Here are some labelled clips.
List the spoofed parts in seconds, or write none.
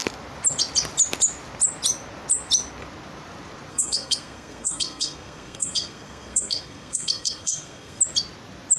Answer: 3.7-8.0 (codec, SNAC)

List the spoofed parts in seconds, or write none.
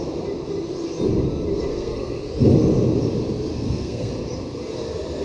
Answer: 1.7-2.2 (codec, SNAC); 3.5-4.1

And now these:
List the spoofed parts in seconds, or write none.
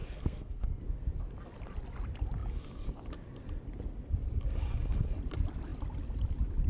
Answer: 0.0-0.8 (codec, SNAC)